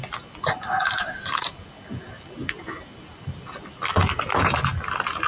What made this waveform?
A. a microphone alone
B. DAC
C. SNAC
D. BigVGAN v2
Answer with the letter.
A